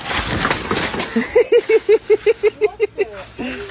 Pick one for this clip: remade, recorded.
recorded